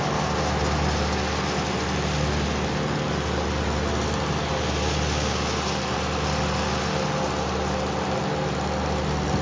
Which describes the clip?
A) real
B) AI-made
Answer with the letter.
A